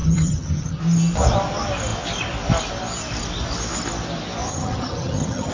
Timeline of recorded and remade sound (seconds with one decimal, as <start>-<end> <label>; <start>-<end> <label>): 0.0-0.8 remade; 0.8-4.5 recorded; 4.5-5.5 remade